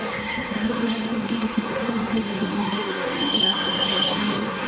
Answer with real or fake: fake